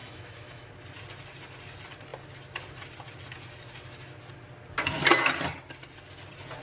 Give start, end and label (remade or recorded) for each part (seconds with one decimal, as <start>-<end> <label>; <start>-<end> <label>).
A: 0.0-0.7 remade; 0.7-6.6 recorded